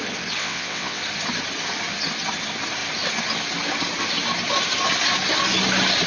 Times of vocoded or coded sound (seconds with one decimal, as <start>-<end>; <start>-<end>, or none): 0.4-1.0